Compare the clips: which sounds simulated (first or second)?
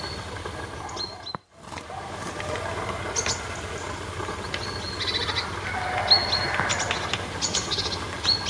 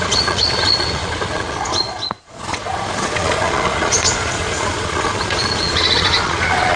second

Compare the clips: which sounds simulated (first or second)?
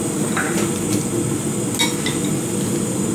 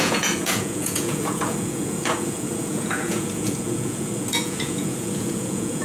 second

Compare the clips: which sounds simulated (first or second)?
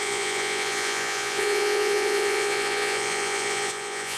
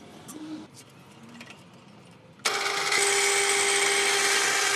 first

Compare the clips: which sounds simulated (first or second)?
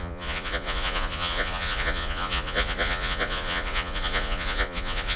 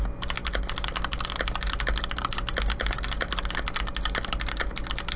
first